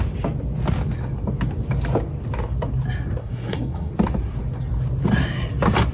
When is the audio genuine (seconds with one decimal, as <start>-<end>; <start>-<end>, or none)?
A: 0.0-3.2; 3.9-5.9